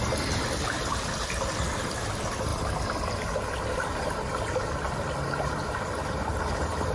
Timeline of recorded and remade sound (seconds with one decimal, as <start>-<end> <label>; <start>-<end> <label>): 0.0-6.9 recorded